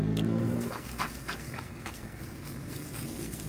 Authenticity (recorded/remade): remade